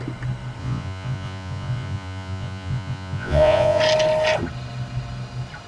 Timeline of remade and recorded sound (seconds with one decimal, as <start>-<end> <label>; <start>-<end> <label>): 0.0-0.6 recorded; 0.6-3.8 remade; 3.8-5.7 recorded